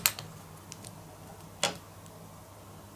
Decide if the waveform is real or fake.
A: real